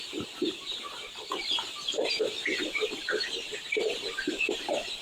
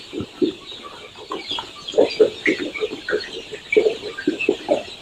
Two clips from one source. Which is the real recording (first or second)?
second